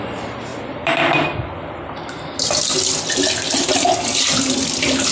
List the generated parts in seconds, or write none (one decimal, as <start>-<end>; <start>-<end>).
none